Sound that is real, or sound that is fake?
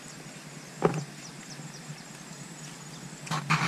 real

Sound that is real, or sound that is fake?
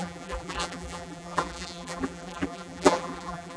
fake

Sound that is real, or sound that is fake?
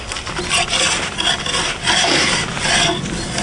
real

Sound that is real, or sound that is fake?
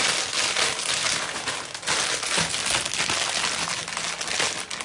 real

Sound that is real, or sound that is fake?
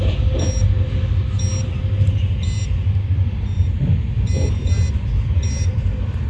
real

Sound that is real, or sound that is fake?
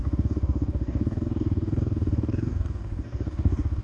fake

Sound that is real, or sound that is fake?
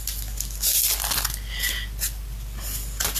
real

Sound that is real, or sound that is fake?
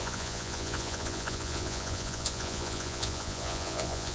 fake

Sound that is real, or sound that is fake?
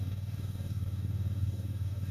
fake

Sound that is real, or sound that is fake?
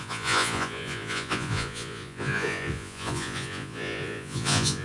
fake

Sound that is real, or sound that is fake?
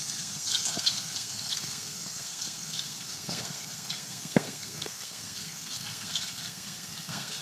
fake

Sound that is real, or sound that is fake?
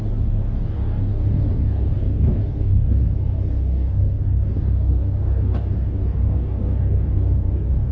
fake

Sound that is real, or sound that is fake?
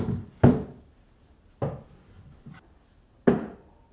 fake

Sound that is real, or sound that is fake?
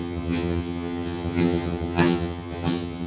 fake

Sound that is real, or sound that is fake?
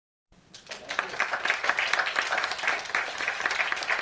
real